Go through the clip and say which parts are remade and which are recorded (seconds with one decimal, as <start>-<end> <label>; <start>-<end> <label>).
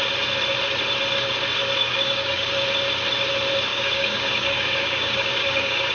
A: 0.0-1.8 recorded; 1.8-2.5 remade; 2.5-3.7 recorded; 3.7-5.9 remade